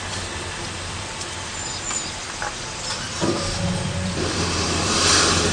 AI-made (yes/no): yes